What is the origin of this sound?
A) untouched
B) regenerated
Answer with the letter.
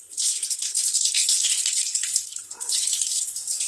B